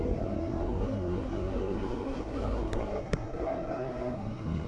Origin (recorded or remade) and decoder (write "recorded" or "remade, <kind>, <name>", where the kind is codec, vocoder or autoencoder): remade, codec, SNAC